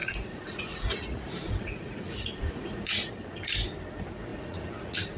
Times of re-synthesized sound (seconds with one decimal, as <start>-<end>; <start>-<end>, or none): 0.0-3.1; 4.3-5.2